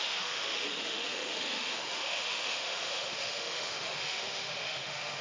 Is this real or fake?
fake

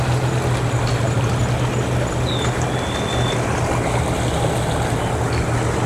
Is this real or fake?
real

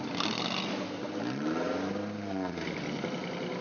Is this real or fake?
real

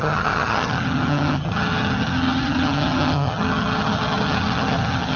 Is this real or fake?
fake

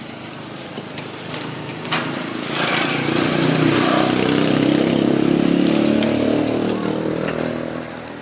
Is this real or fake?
fake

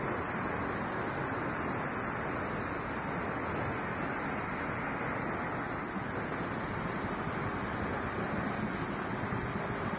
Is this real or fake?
real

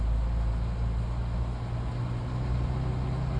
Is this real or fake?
real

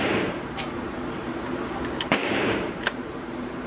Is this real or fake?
fake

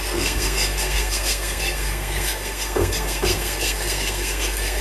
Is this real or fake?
fake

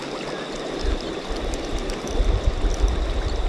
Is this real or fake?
real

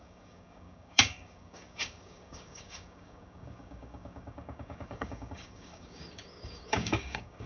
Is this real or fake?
fake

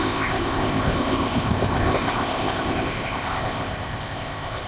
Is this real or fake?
fake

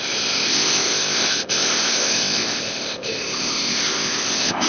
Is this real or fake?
fake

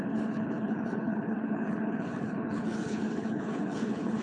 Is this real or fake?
fake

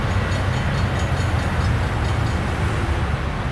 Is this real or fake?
real